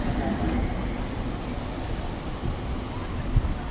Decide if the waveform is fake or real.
real